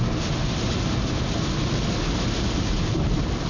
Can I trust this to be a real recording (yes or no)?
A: yes